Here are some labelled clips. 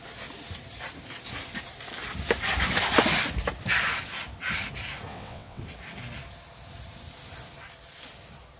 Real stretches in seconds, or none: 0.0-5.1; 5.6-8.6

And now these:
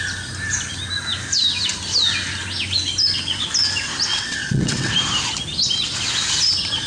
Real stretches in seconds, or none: 0.0-4.1; 4.9-6.9

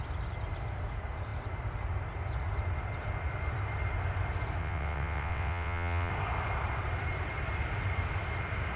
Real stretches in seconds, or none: 0.0-4.6; 6.1-8.8

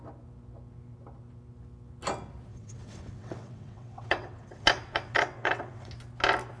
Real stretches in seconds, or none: 0.0-2.5; 5.9-6.6